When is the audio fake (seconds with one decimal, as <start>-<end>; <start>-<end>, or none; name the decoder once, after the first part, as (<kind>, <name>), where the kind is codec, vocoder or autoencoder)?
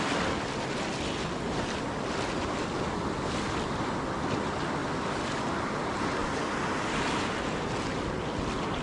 none